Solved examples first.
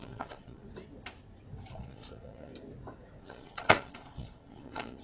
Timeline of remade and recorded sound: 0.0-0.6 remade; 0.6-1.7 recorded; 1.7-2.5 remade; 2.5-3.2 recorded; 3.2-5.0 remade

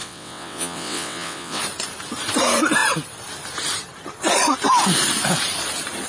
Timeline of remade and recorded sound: 0.0-1.6 remade; 1.6-6.1 recorded